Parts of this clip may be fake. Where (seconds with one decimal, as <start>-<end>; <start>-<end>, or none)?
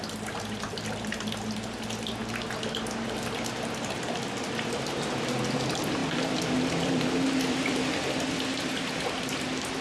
6.0-8.0